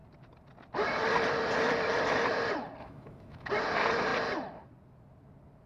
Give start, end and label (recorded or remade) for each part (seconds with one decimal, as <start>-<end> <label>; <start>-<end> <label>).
0.0-2.8 recorded; 2.8-3.5 remade; 3.5-5.7 recorded